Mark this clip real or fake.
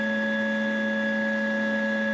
real